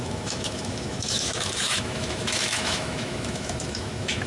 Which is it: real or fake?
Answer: fake